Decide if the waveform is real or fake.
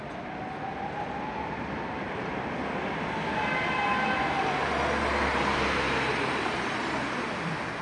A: real